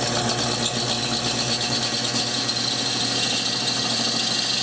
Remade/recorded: recorded